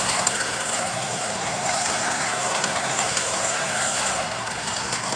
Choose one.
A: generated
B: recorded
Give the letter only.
A